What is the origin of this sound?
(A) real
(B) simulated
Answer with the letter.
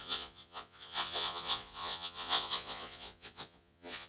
B